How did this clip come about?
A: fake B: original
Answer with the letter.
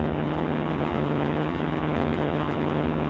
A